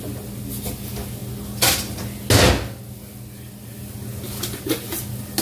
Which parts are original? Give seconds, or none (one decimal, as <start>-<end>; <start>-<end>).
0.0-5.4